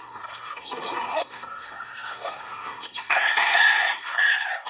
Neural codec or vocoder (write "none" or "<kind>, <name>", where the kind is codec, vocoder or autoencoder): codec, SNAC